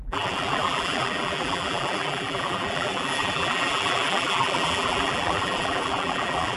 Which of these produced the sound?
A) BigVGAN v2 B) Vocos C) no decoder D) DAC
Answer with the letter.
A